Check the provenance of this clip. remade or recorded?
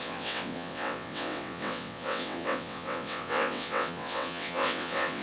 remade